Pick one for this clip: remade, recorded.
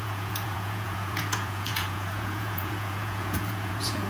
remade